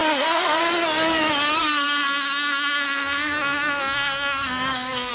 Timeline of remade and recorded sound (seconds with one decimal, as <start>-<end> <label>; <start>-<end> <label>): 0.0-0.6 remade; 0.6-1.6 recorded; 1.6-5.1 remade